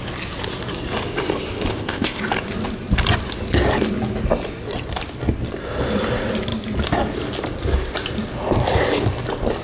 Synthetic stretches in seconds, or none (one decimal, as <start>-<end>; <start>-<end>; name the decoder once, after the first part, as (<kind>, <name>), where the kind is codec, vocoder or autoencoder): 1.7-2.2 (codec, ZipCodec)